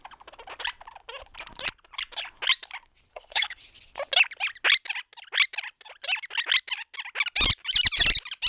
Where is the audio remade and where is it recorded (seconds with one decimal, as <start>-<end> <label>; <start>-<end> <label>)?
0.0-3.1 recorded; 3.1-3.6 remade; 3.6-8.5 recorded